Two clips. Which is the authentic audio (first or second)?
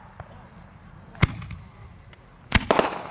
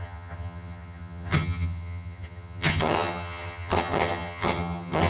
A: first